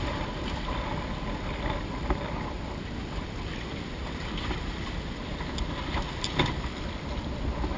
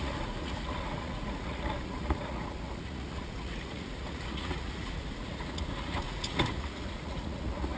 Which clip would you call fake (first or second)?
second